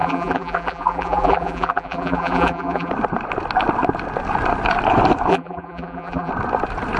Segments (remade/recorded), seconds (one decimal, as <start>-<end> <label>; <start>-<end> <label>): 0.0-2.9 remade; 2.9-5.3 recorded; 5.3-6.3 remade; 6.3-7.0 recorded